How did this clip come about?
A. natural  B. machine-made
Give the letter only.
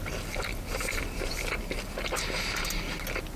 A